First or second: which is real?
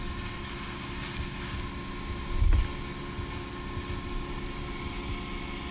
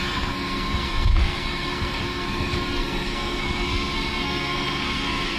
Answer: first